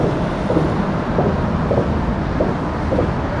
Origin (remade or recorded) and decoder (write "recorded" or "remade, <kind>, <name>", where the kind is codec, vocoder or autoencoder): recorded